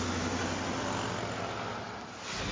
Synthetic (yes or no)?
no